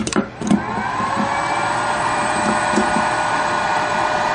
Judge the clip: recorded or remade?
remade